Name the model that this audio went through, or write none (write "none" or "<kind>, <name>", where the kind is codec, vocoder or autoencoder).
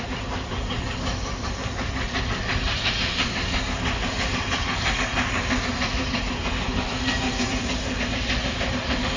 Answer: none